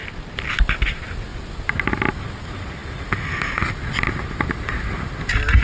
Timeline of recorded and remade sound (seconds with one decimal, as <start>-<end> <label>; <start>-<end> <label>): 0.0-5.6 recorded